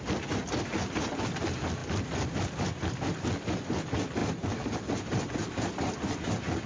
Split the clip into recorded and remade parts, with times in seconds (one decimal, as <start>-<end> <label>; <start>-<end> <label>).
0.0-1.8 recorded; 1.8-2.9 remade; 2.9-4.2 recorded; 4.2-6.7 remade